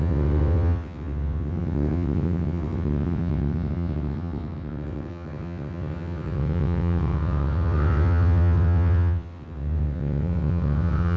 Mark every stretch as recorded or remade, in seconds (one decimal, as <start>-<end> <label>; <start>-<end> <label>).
0.0-11.2 remade